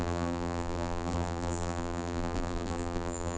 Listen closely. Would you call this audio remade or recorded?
remade